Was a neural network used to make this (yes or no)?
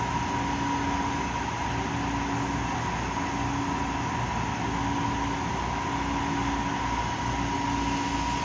no